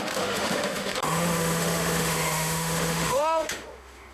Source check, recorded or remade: remade